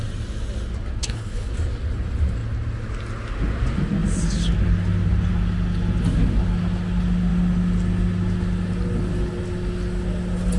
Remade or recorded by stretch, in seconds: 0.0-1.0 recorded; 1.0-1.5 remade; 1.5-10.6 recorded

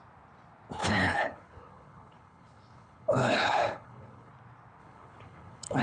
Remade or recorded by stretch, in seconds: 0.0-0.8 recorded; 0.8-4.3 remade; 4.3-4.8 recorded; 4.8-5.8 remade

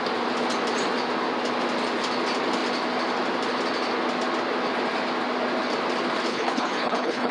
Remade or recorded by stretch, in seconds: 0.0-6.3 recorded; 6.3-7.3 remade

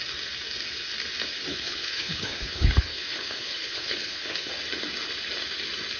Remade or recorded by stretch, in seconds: 0.0-1.5 recorded; 1.5-4.5 remade; 4.5-6.0 recorded